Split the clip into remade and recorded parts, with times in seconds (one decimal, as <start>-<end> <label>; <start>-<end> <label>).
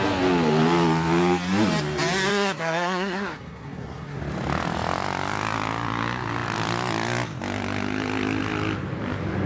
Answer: 0.0-2.3 recorded; 2.3-4.2 remade; 4.2-9.5 recorded